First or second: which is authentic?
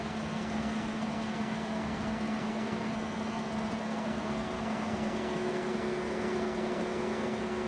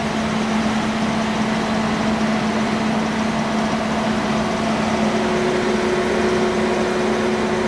second